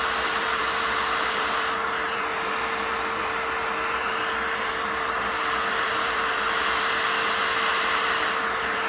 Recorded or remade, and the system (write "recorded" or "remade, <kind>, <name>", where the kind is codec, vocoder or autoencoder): remade, vocoder, BigVGAN v2